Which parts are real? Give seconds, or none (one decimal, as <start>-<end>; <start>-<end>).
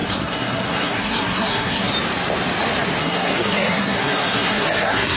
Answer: 1.9-3.0